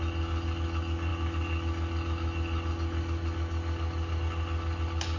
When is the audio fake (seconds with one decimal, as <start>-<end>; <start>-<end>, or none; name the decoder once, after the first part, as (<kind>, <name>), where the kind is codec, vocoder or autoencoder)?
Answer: none